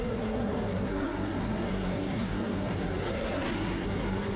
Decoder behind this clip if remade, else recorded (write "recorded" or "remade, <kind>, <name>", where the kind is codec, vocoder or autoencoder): remade, codec, SNAC